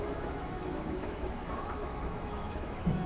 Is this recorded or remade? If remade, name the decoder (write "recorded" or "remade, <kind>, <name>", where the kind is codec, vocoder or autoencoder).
remade, autoencoder, DAC-VAE